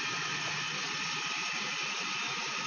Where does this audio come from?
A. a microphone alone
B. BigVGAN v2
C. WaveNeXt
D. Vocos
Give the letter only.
A